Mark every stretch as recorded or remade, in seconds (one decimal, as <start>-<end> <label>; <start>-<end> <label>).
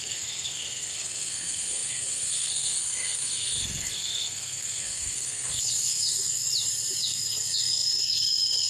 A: 0.0-6.4 remade; 6.4-7.0 recorded; 7.0-8.7 remade